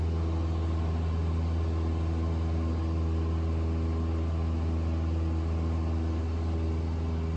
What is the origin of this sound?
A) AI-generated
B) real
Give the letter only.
B